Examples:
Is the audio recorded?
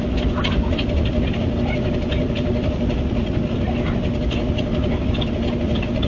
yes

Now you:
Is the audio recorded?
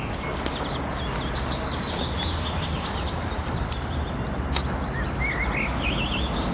yes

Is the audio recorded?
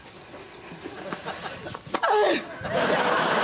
yes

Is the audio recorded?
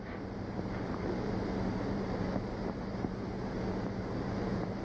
no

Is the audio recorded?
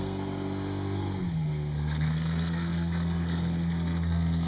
no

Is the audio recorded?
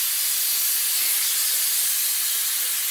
yes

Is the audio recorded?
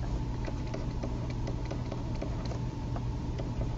yes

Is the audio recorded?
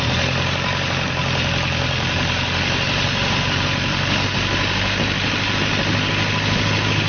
yes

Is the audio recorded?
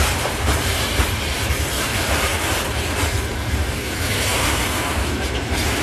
no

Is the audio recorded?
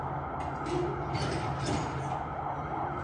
yes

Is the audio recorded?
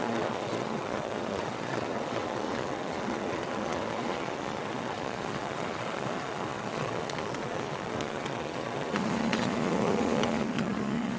no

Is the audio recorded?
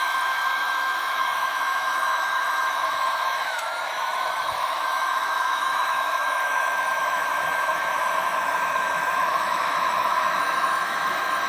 no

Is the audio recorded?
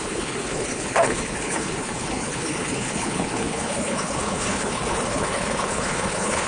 no